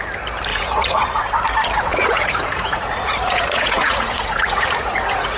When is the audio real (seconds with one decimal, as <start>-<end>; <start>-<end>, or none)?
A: 0.0-0.5; 1.2-1.9